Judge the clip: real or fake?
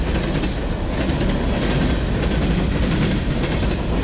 real